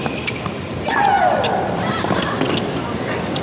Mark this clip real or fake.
real